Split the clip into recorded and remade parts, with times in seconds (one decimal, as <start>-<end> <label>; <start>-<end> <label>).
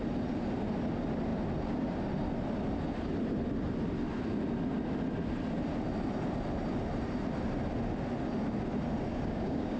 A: 0.0-9.1 recorded; 9.1-9.8 remade